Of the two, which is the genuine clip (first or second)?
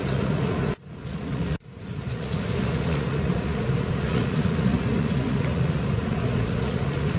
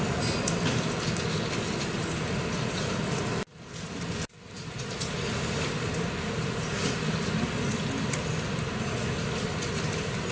second